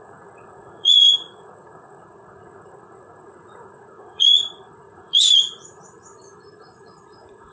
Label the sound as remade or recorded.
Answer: remade